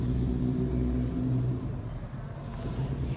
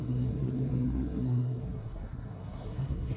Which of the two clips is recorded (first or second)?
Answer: first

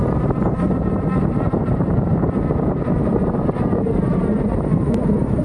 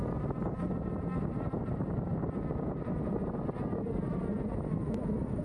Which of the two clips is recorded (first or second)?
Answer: second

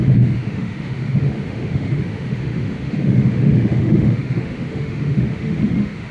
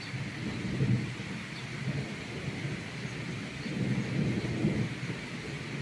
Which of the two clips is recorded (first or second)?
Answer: second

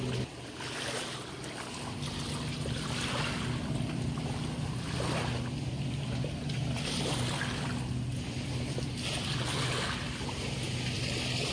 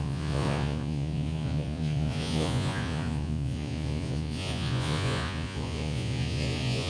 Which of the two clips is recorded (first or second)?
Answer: first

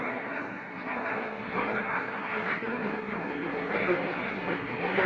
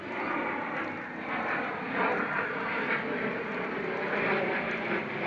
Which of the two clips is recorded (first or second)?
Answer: second